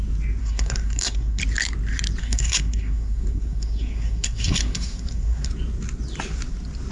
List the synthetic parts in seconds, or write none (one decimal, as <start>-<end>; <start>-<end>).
0.4-1.4; 2.2-5.5